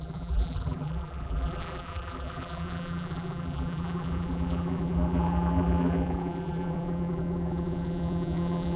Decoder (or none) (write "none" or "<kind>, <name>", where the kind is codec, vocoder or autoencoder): vocoder, BigVGAN v2